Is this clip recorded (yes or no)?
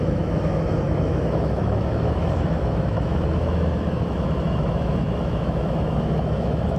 no